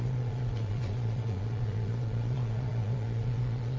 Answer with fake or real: fake